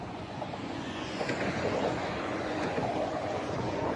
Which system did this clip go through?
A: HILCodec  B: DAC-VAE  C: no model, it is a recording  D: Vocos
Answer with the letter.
D